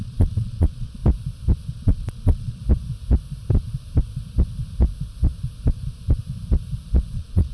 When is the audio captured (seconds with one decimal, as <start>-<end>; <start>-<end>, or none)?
1.0-1.7; 2.6-7.1